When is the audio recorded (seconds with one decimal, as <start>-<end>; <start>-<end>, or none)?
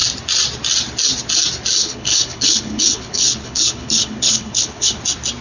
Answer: 0.0-1.8; 5.0-5.4